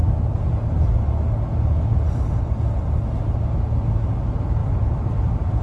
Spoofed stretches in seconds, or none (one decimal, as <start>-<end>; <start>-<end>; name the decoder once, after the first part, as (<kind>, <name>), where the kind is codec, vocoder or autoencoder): 4.6-5.6 (vocoder, BigVGAN v2)